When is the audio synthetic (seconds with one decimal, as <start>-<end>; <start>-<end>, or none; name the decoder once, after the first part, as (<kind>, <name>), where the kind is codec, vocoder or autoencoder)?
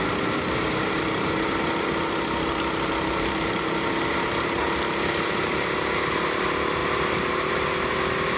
none